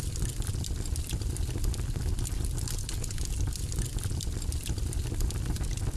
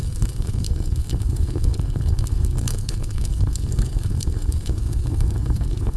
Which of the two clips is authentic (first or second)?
first